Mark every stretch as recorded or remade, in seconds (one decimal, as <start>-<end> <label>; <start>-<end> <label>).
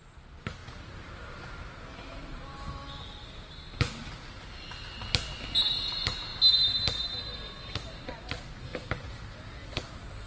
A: 0.0-0.6 recorded; 0.6-2.7 remade; 2.7-4.0 recorded; 4.0-5.0 remade; 5.0-8.7 recorded; 8.7-10.3 remade